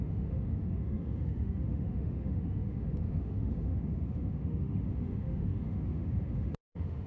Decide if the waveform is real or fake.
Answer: fake